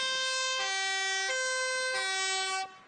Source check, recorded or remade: recorded